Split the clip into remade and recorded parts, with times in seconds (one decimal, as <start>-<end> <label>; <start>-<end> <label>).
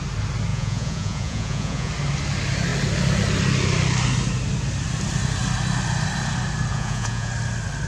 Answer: 0.0-0.5 recorded; 0.5-1.9 remade; 1.9-6.7 recorded; 6.7-7.3 remade; 7.3-7.9 recorded